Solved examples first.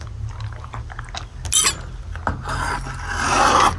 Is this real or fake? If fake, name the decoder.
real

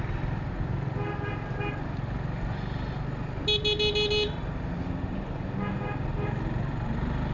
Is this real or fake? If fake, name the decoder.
real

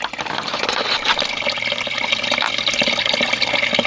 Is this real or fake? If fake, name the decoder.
real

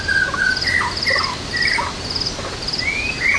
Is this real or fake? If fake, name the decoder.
real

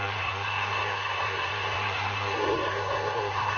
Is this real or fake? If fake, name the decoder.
fake, codec, SNAC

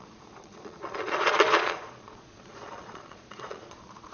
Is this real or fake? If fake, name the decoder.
fake, vocoder, Vocos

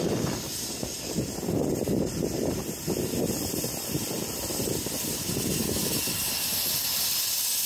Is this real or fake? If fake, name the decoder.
real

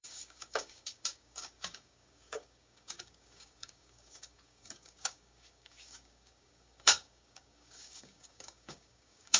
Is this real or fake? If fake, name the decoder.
fake, codec, DAC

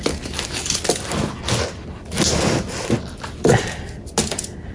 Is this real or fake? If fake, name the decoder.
real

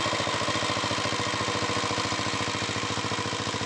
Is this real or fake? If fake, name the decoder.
real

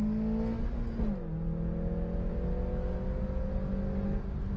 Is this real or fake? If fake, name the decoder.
real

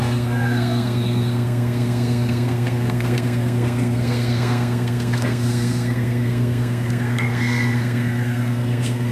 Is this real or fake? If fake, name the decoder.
fake, codec, SNAC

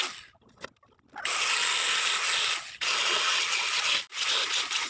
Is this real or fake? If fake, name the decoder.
real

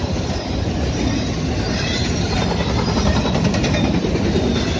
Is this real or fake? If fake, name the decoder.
real